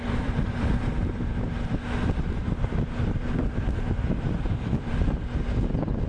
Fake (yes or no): yes